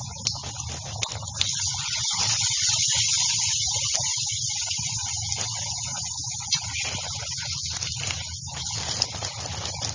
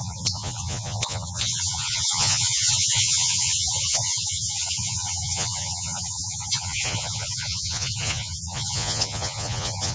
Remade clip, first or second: second